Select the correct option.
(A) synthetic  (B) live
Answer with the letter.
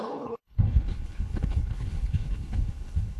A